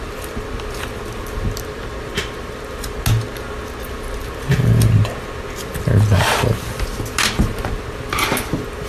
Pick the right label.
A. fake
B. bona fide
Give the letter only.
B